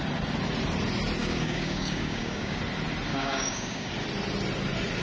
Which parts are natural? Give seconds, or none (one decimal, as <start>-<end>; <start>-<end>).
0.0-1.2; 2.6-3.1; 3.9-5.0